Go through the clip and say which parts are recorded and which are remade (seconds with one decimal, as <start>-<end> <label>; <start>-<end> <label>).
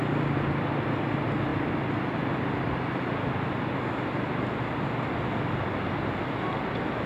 0.0-7.1 recorded